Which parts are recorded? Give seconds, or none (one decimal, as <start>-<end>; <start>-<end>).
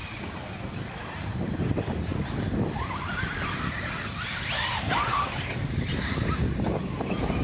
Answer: 0.0-7.4